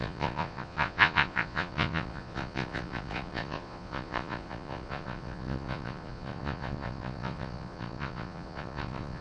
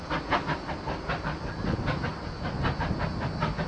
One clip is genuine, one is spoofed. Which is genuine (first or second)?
second